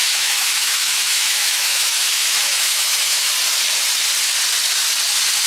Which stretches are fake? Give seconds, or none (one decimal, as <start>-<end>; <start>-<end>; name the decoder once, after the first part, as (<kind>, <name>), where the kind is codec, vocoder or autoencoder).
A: 0.0-3.3 (autoencoder, DAC-VAE)